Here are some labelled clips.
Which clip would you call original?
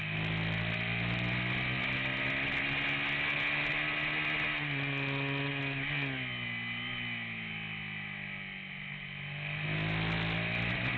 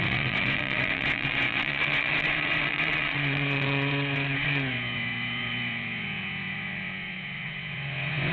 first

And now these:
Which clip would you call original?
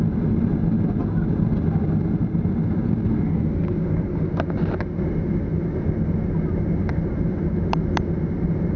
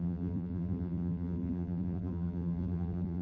first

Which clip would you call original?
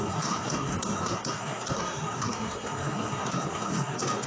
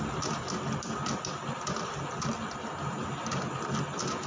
second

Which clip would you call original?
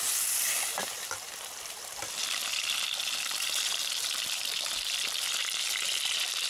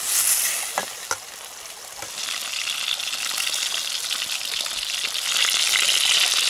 second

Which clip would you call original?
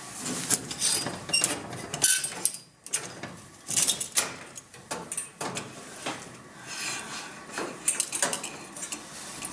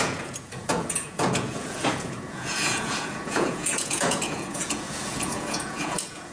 first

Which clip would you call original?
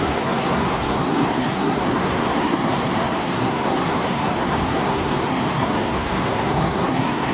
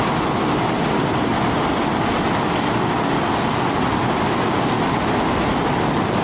second